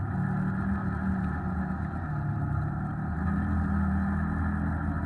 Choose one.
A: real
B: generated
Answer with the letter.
A